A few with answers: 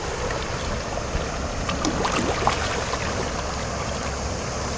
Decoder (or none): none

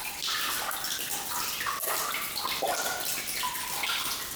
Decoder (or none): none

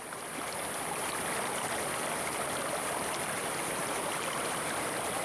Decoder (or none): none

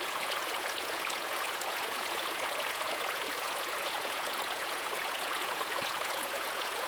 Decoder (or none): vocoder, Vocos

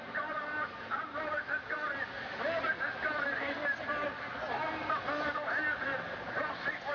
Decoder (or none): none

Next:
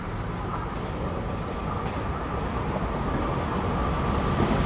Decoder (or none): none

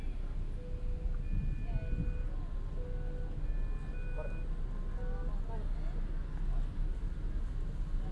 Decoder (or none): none